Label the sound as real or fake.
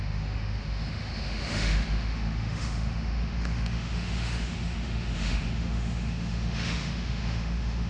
fake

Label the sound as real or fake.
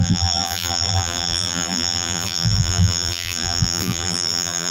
fake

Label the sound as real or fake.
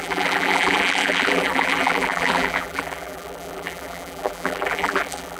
fake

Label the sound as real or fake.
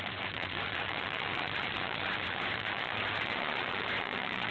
fake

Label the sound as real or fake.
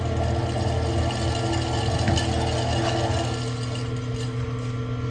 real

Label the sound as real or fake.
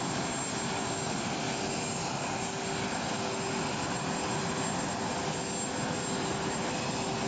real